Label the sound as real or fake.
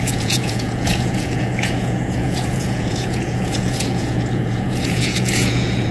fake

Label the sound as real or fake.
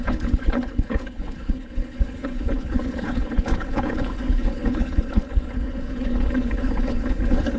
fake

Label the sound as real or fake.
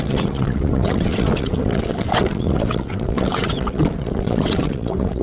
fake